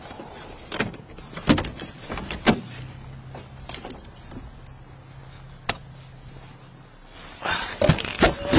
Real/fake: fake